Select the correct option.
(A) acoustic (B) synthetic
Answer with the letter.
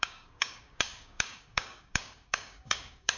B